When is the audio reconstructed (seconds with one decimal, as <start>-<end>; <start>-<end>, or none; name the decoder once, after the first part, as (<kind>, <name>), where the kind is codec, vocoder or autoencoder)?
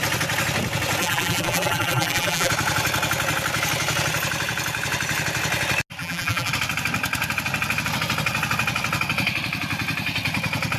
1.0-2.5 (vocoder, BigVGAN v2); 6.0-6.5